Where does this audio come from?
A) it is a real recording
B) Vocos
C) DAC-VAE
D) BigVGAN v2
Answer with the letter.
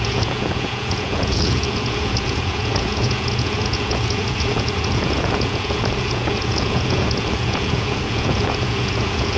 B